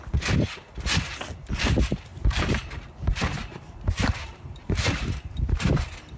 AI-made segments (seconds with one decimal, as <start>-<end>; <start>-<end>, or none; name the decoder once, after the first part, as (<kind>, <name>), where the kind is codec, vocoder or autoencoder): 2.1-5.8 (vocoder, BigVGAN v2)